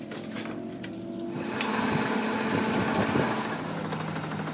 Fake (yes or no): no